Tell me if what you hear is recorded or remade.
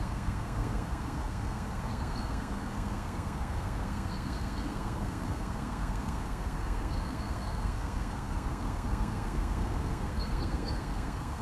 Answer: remade